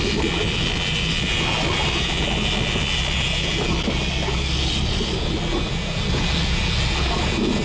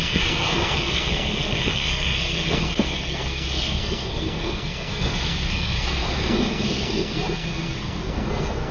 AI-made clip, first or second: second